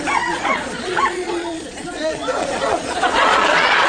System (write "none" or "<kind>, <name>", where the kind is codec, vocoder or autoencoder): vocoder, Vocos